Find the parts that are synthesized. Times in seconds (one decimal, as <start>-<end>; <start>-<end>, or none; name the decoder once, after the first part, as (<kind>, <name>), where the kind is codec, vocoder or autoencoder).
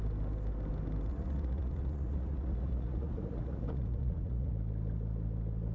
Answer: 1.1-4.5 (vocoder, Vocos)